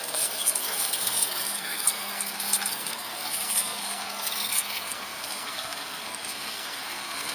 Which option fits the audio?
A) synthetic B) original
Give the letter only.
A